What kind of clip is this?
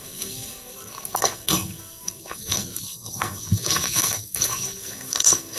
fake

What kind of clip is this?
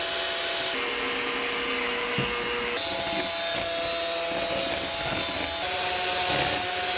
real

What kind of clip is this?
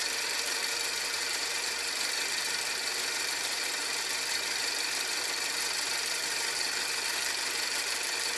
fake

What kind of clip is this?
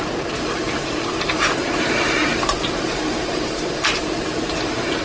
fake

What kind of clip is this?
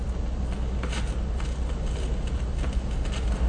real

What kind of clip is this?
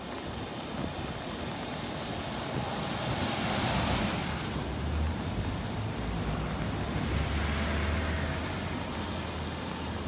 real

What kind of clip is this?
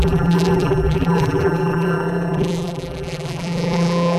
fake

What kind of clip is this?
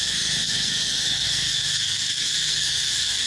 fake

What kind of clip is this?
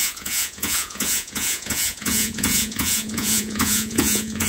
fake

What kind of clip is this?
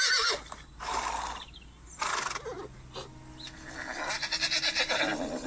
real